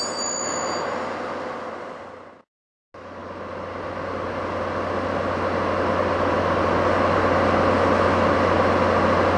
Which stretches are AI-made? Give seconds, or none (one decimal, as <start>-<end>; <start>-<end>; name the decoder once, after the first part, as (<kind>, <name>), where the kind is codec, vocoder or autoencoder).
none